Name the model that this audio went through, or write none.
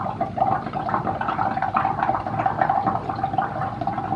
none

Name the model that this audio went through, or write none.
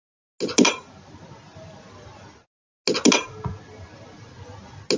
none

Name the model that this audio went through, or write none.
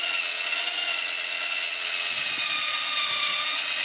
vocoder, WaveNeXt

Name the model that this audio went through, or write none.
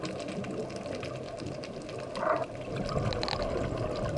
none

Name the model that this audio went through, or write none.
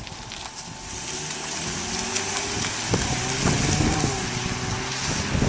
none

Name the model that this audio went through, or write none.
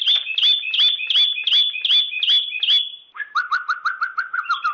none